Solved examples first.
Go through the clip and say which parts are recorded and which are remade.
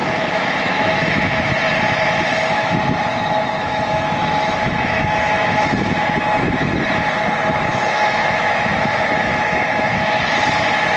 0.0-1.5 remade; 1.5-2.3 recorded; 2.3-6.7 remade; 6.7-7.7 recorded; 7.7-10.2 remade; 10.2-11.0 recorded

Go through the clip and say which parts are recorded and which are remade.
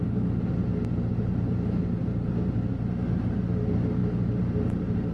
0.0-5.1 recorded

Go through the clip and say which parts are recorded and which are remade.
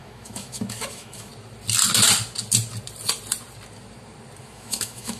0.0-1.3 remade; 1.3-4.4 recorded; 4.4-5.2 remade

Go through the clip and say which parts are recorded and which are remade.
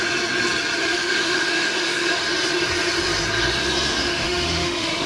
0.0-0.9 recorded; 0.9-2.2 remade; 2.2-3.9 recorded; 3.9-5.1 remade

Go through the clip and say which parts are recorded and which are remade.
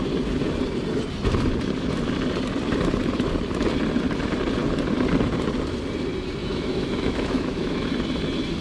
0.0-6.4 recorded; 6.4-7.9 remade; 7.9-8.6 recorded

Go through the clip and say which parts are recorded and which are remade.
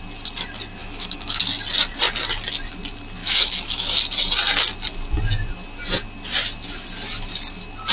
0.0-0.8 recorded; 0.8-1.4 remade; 1.4-3.2 recorded; 3.2-4.0 remade; 4.0-7.9 recorded